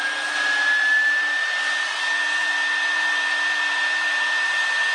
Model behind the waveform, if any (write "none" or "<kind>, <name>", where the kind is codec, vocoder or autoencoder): none